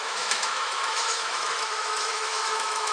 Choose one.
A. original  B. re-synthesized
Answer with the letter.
B